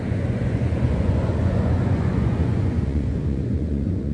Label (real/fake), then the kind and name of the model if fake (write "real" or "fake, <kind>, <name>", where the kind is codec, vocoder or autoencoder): fake, vocoder, Vocos